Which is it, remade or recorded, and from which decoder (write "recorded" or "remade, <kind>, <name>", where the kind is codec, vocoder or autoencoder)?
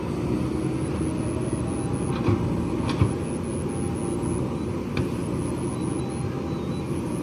recorded